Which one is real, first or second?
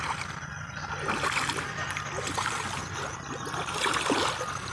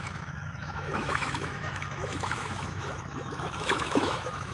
first